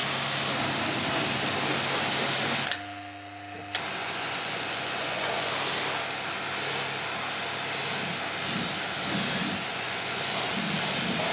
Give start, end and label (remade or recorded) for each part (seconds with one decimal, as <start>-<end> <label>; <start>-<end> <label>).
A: 0.0-4.0 recorded; 4.0-5.5 remade; 5.5-9.7 recorded; 9.7-10.5 remade; 10.5-11.3 recorded